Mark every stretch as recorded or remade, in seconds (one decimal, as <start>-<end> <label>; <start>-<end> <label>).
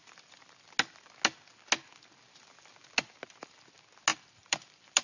0.0-4.1 recorded; 4.1-5.0 remade